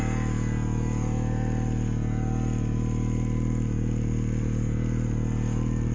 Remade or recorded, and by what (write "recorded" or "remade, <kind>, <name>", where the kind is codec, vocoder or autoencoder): recorded